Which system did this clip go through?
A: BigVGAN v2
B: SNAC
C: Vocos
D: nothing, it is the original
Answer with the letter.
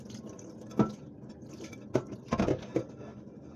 D